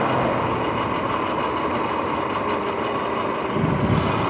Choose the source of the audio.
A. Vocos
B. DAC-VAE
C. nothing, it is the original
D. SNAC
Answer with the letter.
C